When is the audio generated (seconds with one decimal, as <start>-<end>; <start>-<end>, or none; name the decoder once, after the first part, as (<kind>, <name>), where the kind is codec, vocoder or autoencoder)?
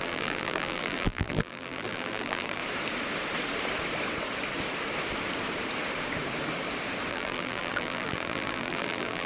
0.0-2.6 (vocoder, BigVGAN v2); 7.1-9.3